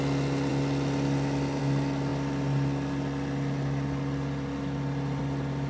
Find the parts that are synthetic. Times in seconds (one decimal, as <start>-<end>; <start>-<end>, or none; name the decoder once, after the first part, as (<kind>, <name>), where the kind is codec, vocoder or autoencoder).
none